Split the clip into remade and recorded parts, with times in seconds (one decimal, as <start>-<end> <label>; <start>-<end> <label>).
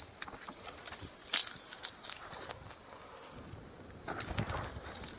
0.0-5.2 recorded